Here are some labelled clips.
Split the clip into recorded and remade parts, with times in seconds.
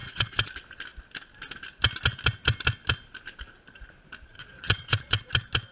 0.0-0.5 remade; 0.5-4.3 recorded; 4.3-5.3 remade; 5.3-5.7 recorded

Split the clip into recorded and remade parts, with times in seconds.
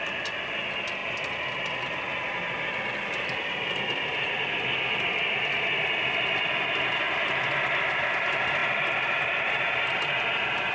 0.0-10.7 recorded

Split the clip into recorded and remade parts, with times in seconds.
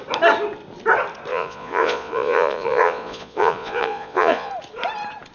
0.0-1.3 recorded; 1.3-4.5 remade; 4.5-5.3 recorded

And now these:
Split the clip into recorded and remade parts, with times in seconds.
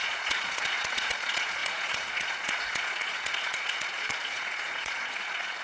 0.0-5.6 remade